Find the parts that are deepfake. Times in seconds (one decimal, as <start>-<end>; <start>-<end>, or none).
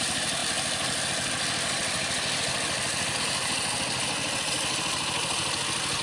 none